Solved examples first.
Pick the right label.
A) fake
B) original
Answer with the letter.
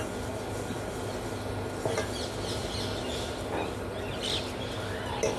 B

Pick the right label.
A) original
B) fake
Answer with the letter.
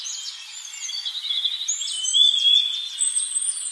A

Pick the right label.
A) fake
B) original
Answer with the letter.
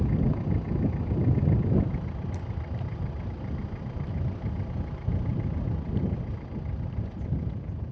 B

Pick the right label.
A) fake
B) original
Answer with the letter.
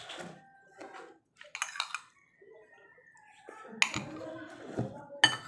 B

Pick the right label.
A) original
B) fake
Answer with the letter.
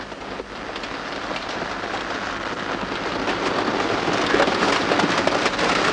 A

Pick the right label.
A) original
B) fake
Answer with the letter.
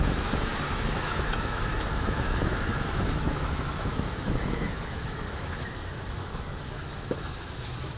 B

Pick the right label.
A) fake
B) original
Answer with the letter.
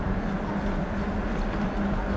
B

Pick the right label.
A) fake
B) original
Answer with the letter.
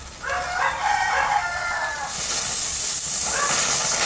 B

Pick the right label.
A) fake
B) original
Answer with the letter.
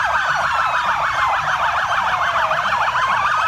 B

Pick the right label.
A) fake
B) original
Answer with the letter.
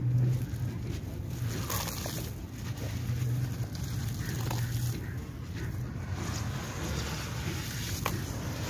B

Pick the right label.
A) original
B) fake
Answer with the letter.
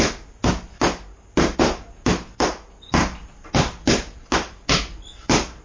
A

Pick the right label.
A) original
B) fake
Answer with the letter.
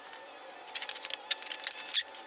A